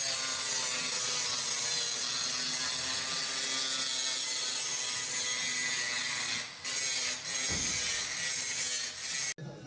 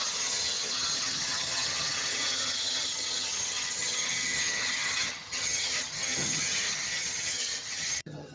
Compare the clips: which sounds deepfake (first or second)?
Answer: second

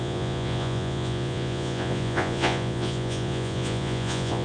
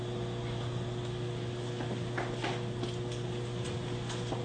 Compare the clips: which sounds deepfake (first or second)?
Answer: first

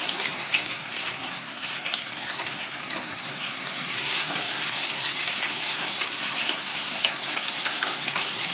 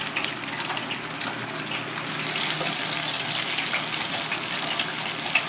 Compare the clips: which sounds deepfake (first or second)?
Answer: first